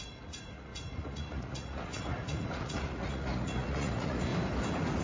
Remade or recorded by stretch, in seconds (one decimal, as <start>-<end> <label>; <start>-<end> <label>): 0.0-4.3 remade; 4.3-5.0 recorded